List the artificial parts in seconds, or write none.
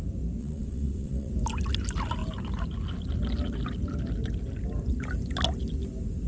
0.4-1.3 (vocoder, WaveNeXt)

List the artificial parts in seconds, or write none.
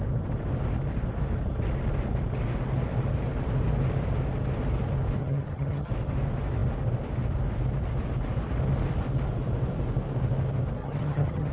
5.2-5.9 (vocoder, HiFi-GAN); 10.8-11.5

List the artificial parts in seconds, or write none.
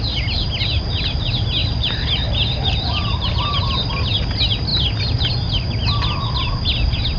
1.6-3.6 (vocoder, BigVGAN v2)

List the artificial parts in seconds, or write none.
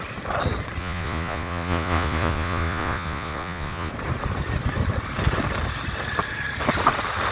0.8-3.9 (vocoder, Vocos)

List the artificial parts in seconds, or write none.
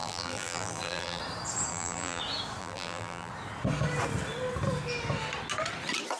0.0-1.2 (vocoder, BigVGAN v2); 1.7-2.2; 2.6-3.3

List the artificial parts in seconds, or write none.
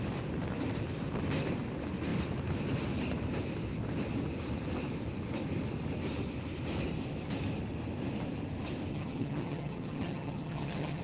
8.9-11.0 (vocoder, HiFi-GAN)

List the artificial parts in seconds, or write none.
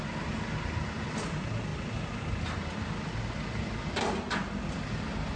none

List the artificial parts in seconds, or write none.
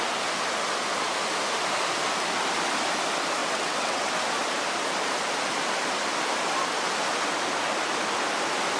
3.4-4.1 (vocoder, WaveNeXt)